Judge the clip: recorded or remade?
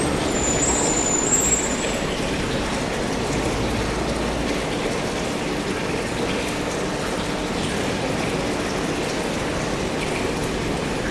recorded